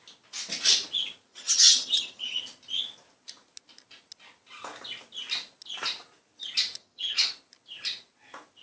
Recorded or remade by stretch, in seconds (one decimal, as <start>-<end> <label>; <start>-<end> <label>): 0.0-1.3 recorded; 1.3-2.4 remade; 2.4-6.8 recorded; 6.8-7.3 remade; 7.3-8.6 recorded